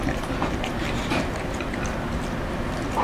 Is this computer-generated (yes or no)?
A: yes